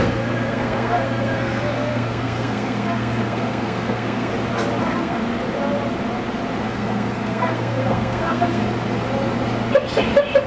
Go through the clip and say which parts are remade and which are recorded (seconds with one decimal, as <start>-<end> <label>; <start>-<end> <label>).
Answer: 0.0-4.3 remade; 4.3-4.8 recorded; 4.8-5.2 remade; 5.2-6.6 recorded; 6.6-8.6 remade; 8.6-10.5 recorded

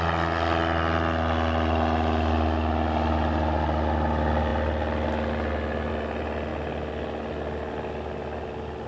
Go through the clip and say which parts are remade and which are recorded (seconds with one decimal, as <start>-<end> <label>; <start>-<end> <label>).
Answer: 0.0-8.9 recorded

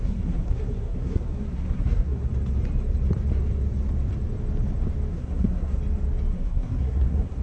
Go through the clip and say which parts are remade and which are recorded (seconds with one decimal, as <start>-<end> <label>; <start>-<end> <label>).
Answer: 0.0-2.3 remade; 2.3-5.1 recorded; 5.1-5.8 remade; 5.8-6.3 recorded; 6.3-7.4 remade

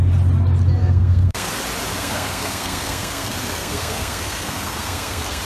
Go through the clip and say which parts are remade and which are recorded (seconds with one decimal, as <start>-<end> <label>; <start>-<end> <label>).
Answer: 0.0-0.8 recorded; 0.8-1.5 remade; 1.5-1.9 recorded; 1.9-5.4 remade

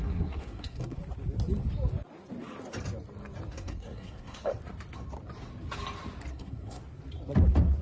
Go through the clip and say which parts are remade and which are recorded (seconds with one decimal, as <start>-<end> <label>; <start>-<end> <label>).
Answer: 0.0-1.0 remade; 1.0-3.5 recorded; 3.5-4.5 remade; 4.5-6.3 recorded; 6.3-6.8 remade; 6.8-7.8 recorded

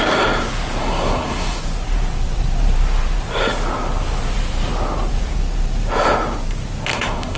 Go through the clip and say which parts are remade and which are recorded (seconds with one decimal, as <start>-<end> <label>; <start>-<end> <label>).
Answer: 0.0-0.8 recorded; 0.8-1.6 remade; 1.6-6.9 recorded; 6.9-7.4 remade

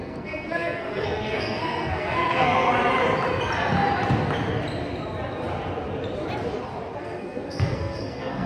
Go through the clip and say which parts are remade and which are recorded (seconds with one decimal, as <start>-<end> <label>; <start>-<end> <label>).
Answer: 0.0-2.7 remade; 2.7-7.0 recorded; 7.0-8.5 remade